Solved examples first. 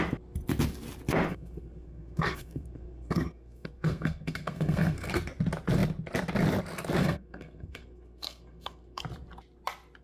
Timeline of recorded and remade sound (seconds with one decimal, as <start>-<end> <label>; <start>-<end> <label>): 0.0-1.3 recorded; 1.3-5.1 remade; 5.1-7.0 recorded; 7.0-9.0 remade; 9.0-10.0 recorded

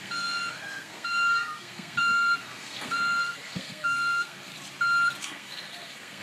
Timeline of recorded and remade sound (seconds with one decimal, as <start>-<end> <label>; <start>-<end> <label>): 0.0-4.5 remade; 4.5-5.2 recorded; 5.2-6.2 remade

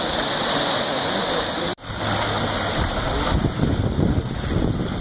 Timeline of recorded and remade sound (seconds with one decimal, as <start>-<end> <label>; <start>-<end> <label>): 0.0-5.0 recorded

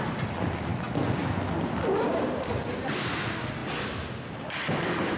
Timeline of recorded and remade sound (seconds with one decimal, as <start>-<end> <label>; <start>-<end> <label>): 0.0-5.2 recorded

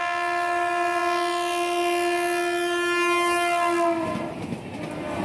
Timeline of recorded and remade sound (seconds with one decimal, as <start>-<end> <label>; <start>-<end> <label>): 0.0-5.2 recorded

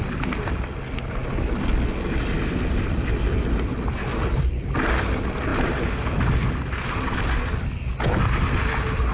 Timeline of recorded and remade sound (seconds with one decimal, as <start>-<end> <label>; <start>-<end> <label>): 0.0-9.1 recorded